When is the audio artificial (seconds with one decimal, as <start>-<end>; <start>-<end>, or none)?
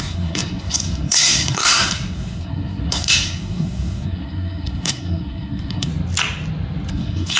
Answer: 0.0-5.9; 6.9-7.4